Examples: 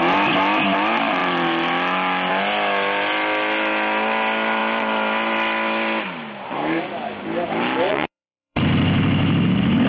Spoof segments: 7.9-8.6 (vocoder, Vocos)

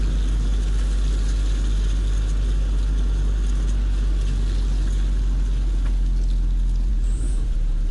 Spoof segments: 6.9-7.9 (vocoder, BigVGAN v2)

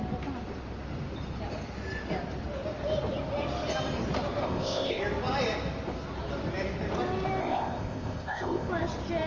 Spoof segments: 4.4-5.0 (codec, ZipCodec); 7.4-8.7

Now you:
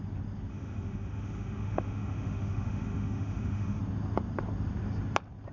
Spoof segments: 0.5-3.8 (autoencoder, DAC-VAE)

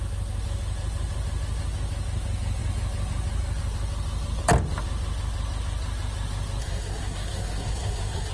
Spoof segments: 6.6-8.3 (codec, SNAC)

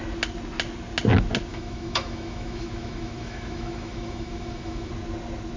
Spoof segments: 1.5-4.9 (autoencoder, DAC-VAE)

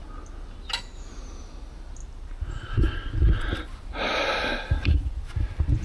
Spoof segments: 2.0-2.5 (vocoder, BigVGAN v2); 3.2-5.3